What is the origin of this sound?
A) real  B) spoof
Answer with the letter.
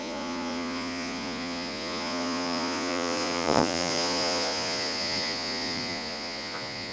B